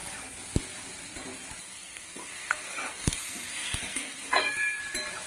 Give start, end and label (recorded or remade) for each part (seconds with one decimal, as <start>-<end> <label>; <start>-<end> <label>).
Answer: 0.0-1.6 recorded; 1.6-4.8 remade; 4.8-5.3 recorded